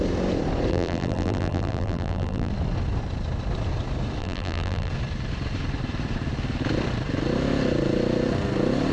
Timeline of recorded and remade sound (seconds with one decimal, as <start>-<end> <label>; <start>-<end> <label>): 0.0-0.7 recorded; 0.7-2.5 remade; 2.5-4.2 recorded; 4.2-4.9 remade; 4.9-8.9 recorded